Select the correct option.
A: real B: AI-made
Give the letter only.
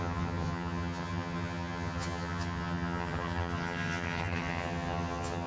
B